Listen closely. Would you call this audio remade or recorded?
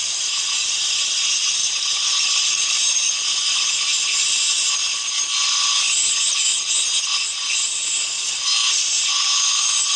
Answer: recorded